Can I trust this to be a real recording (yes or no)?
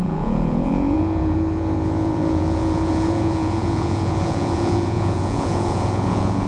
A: no